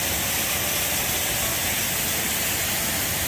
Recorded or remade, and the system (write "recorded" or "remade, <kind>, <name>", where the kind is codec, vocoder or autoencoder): recorded